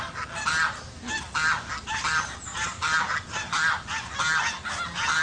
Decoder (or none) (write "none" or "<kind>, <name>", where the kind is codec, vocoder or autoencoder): none